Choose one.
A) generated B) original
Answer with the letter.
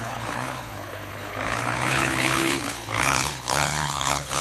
A